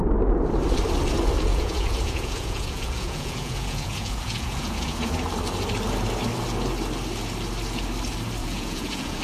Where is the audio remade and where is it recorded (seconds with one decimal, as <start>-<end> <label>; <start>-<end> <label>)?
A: 0.0-1.5 recorded; 1.5-5.1 remade; 5.1-8.4 recorded; 8.4-9.2 remade